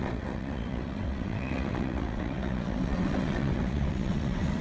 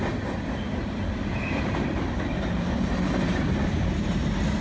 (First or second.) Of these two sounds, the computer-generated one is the first